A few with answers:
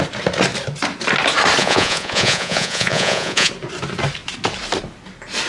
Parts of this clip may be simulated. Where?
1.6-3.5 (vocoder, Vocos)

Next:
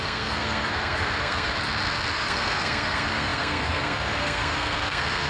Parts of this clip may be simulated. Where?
0.0-1.5 (codec, SNAC); 2.1-5.3

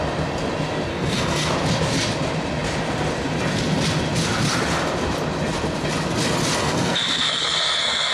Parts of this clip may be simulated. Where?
0.9-1.5 (codec, SNAC); 6.6-8.1

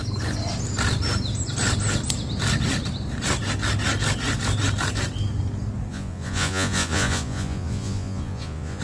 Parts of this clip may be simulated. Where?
5.9-8.8 (vocoder, Vocos)

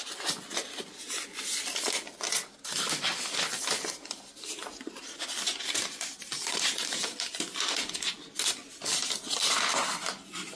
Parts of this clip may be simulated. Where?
none